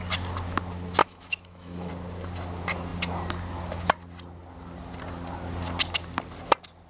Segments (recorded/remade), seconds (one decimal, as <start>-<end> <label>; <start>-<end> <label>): 0.0-1.0 recorded; 1.0-1.9 remade; 1.9-6.9 recorded